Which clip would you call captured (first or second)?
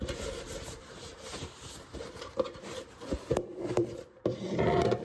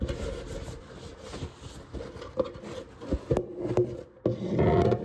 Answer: second